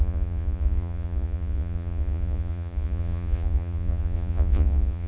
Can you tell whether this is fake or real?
fake